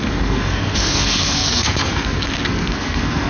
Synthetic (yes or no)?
yes